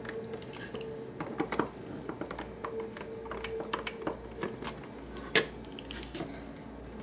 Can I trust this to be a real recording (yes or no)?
yes